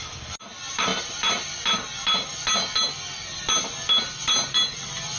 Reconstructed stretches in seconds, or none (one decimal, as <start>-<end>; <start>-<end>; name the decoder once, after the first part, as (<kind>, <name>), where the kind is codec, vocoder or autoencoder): none